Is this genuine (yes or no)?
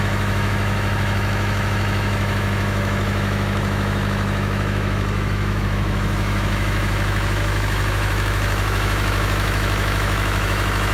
no